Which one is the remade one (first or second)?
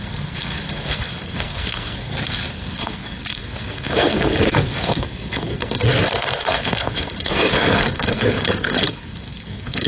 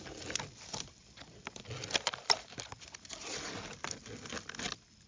first